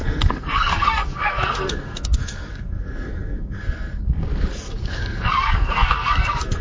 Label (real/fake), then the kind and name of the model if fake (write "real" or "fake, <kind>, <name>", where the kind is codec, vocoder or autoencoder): fake, codec, SNAC